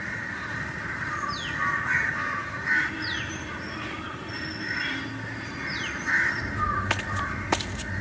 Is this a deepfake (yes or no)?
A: no